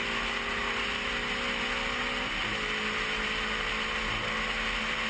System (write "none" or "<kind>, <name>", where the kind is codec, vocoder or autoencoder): none